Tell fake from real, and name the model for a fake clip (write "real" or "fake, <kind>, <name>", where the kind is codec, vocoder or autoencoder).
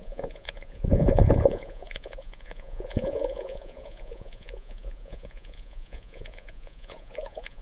fake, vocoder, Vocos